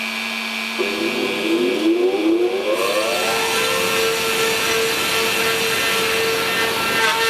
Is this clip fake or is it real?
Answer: real